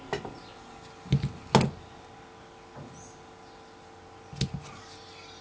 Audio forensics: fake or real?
real